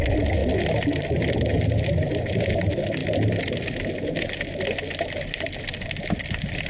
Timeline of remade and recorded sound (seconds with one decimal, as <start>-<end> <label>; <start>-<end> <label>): 0.0-6.7 recorded